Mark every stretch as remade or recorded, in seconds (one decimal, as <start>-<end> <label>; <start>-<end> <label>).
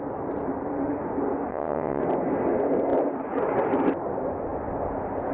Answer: 0.0-1.5 recorded; 1.5-2.0 remade; 2.0-5.3 recorded